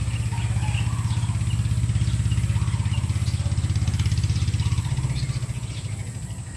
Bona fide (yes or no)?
yes